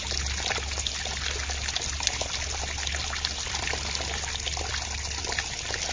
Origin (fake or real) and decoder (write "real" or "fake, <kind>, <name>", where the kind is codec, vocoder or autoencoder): real